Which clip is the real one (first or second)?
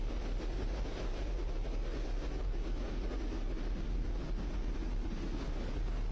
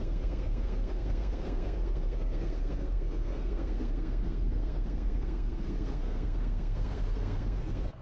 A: first